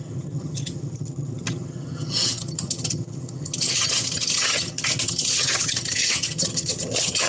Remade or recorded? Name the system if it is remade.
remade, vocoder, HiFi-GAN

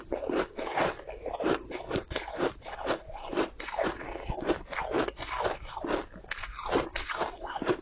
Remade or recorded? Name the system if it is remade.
recorded